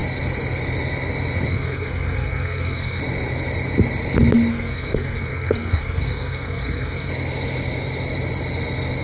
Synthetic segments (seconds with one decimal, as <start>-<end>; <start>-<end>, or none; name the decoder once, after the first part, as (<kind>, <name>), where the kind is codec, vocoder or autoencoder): 1.5-3.0 (codec, SNAC); 4.5-7.1